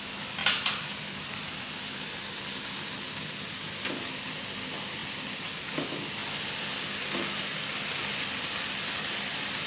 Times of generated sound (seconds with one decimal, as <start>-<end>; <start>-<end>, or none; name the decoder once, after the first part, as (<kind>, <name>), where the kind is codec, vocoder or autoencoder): 0.4-1.6 (vocoder, BigVGAN v2)